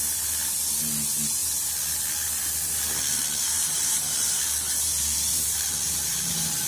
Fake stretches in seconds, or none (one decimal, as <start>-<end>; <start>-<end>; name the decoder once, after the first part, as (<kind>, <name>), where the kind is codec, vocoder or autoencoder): 3.4-6.7 (vocoder, BigVGAN v2)